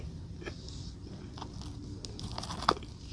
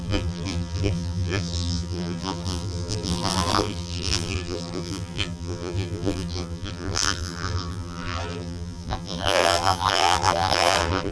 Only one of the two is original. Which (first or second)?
first